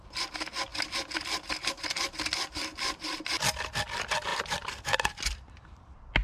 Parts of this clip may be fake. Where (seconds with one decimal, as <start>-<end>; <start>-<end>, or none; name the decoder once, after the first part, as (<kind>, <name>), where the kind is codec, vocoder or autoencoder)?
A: none